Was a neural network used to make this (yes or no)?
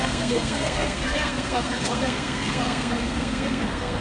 yes